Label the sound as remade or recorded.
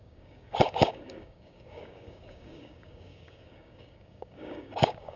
remade